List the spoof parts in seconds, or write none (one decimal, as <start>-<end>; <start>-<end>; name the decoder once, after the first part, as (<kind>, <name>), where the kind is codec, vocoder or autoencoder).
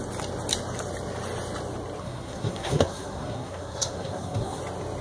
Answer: 2.0-4.6 (codec, SNAC)